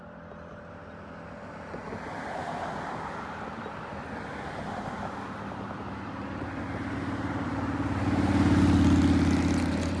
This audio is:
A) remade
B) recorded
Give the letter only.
B